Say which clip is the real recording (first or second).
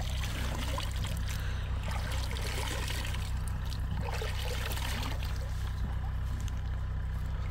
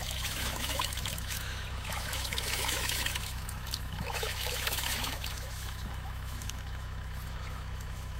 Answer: first